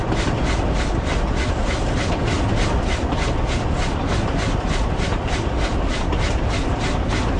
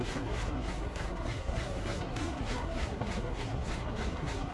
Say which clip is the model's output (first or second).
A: second